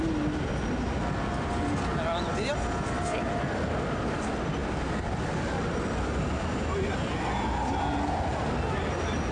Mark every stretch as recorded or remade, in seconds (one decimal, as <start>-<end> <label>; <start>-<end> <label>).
0.0-9.3 recorded